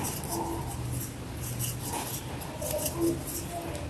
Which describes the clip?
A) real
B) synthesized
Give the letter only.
A